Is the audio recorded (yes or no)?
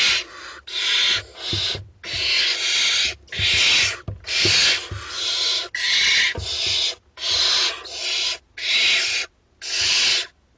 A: yes